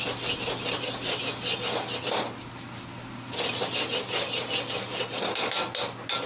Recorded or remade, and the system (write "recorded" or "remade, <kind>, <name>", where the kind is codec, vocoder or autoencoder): recorded